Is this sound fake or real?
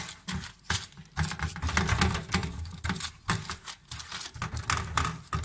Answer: real